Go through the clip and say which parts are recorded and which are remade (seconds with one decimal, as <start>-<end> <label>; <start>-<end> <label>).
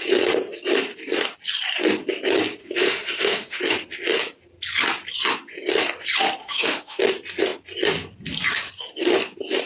0.0-2.6 recorded; 2.6-3.6 remade; 3.6-6.4 recorded; 6.4-7.0 remade; 7.0-9.7 recorded